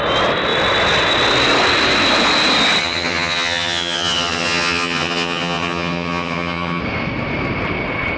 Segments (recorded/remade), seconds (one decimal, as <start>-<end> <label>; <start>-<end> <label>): 0.0-2.8 recorded; 2.8-6.8 remade; 6.8-8.2 recorded